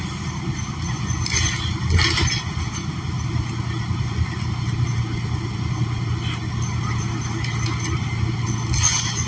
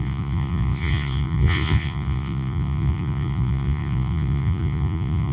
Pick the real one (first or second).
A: first